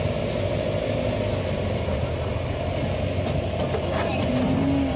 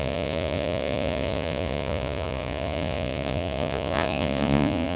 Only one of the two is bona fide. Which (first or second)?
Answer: first